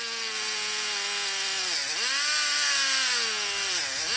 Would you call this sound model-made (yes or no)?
no